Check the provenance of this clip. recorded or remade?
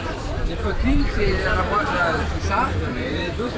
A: remade